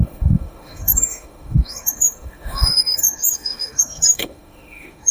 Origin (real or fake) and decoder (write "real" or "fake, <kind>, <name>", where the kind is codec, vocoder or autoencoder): fake, autoencoder, DAC-VAE